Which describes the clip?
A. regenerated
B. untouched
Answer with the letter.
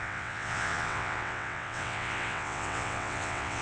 A